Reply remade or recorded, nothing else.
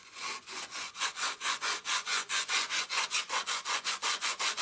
remade